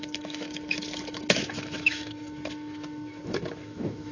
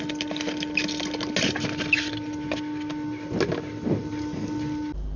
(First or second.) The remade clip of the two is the first